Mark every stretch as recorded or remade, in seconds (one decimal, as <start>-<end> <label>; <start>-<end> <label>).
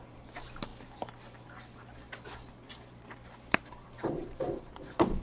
0.0-5.2 recorded